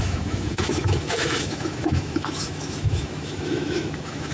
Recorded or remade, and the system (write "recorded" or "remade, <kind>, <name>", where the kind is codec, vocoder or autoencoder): remade, autoencoder, DAC-VAE